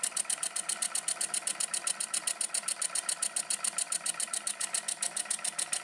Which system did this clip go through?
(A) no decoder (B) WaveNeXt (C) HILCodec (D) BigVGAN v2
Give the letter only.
D